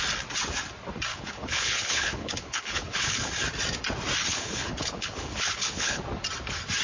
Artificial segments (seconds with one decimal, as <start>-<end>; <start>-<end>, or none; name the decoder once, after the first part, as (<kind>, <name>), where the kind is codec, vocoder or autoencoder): 1.1-3.3 (codec, HILCodec); 4.3-6.0